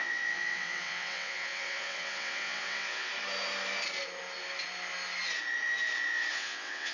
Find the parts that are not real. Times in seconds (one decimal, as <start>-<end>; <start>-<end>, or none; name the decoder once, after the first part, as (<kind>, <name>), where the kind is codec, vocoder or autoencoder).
0.0-3.1 (vocoder, WaveNeXt); 6.3-6.9